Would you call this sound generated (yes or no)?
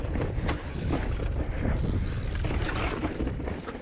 no